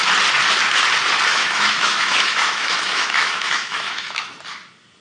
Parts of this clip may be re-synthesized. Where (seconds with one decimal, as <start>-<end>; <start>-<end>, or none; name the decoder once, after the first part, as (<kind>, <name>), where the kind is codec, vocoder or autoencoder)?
1.3-4.3 (autoencoder, DAC-VAE)